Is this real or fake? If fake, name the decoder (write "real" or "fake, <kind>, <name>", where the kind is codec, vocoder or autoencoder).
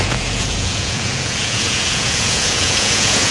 fake, vocoder, Vocos